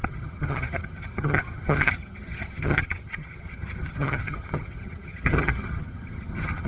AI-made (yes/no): yes